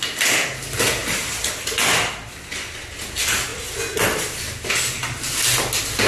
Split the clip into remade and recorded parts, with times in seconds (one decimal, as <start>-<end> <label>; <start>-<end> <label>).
0.0-6.1 recorded